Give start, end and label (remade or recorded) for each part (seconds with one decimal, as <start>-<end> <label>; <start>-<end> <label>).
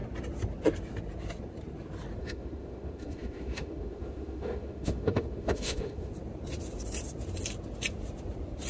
0.0-2.2 recorded; 2.2-6.1 remade; 6.1-8.7 recorded